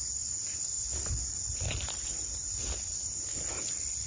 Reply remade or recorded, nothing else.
recorded